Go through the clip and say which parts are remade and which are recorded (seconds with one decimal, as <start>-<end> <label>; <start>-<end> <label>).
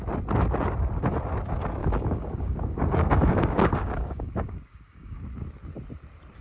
0.0-1.8 recorded; 1.8-5.2 remade; 5.2-6.4 recorded